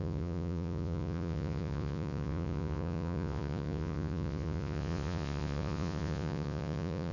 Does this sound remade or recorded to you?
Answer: remade